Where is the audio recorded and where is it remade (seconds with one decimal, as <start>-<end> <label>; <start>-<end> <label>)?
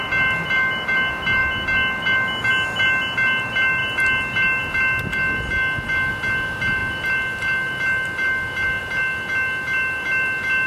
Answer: 0.0-10.7 recorded